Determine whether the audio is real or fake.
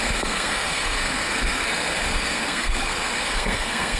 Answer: fake